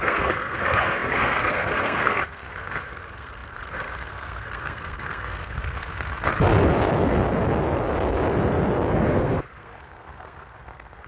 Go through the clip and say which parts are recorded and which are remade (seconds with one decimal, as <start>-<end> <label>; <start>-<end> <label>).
0.0-6.3 remade; 6.3-9.1 recorded; 9.1-11.1 remade